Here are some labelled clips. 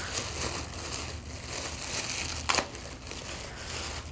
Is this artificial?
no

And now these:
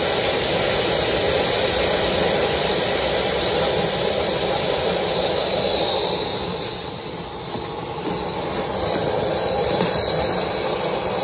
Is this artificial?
no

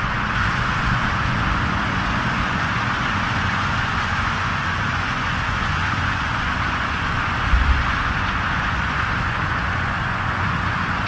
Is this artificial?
yes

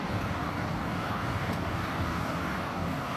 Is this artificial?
yes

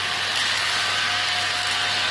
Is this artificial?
no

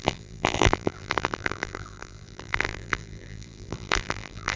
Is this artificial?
yes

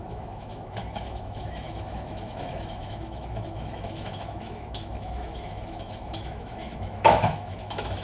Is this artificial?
yes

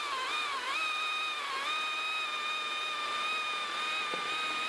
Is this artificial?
no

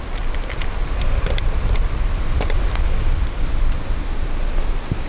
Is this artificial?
no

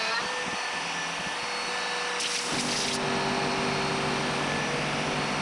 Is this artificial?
no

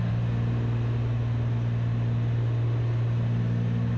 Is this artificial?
no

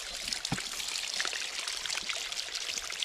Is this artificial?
no